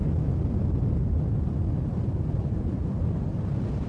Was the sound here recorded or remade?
recorded